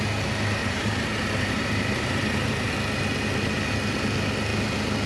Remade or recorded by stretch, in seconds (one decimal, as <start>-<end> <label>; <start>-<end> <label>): 0.0-0.6 recorded; 0.6-2.7 remade; 2.7-5.1 recorded